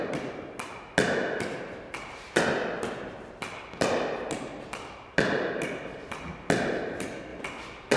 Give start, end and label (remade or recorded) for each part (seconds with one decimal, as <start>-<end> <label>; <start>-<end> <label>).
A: 0.0-8.0 recorded